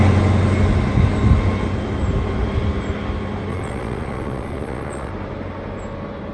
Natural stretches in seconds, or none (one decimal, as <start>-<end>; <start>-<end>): 0.0-3.5; 5.1-6.3